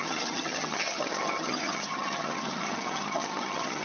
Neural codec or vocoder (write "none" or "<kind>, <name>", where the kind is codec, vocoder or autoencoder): vocoder, HiFi-GAN